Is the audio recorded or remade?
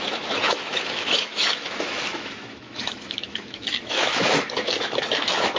remade